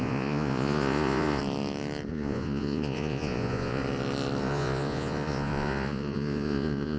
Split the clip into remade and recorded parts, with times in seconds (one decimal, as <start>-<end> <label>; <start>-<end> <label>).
0.0-1.4 remade; 1.4-2.1 recorded; 2.1-3.8 remade; 3.8-4.4 recorded; 4.4-7.0 remade